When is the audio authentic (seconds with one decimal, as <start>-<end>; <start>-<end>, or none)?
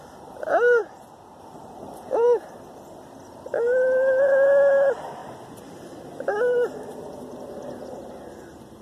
0.8-1.4